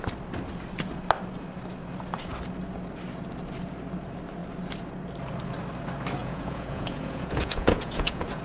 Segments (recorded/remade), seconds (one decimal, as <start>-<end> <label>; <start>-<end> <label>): 0.0-6.2 recorded; 6.2-8.4 remade